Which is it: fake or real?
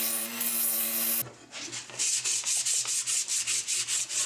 real